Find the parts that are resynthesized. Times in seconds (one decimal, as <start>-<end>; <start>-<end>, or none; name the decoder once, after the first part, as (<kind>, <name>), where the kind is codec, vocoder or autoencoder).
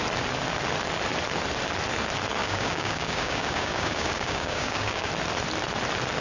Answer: 2.4-5.1 (codec, DAC)